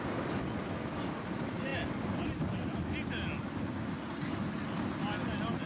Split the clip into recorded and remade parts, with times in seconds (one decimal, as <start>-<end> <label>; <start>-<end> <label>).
0.0-5.7 recorded